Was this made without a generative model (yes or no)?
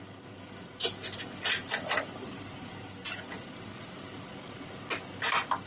yes